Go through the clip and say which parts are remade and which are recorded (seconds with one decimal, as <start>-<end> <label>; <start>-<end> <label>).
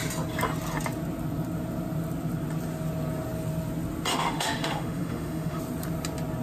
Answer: 0.0-4.1 recorded; 4.1-5.6 remade; 5.6-6.4 recorded